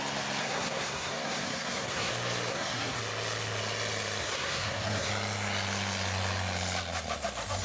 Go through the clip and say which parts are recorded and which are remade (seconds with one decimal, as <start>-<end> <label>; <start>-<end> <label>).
0.0-0.4 recorded; 0.4-2.1 remade; 2.1-2.5 recorded; 2.5-3.0 remade; 3.0-4.2 recorded; 4.2-5.1 remade; 5.1-7.6 recorded